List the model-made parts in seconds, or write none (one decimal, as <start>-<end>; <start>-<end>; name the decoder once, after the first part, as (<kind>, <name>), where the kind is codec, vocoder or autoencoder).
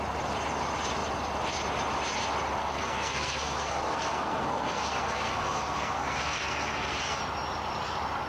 2.6-7.2 (codec, SNAC)